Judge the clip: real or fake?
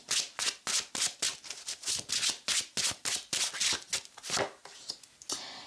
real